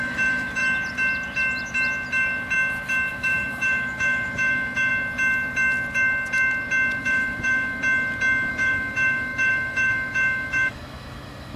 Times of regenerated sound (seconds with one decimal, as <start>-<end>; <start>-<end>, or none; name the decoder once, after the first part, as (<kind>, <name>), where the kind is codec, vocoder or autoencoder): 0.0-0.6 (autoencoder, DAC-VAE); 3.1-4.9; 7.0-7.8; 8.5-11.6